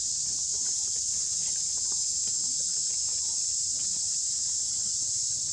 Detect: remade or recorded recorded